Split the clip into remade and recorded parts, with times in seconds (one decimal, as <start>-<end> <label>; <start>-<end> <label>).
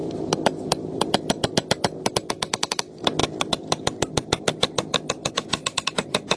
0.0-6.4 recorded